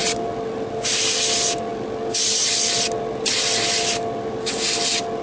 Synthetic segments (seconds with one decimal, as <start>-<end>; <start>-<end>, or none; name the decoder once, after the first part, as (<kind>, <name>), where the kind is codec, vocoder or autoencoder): none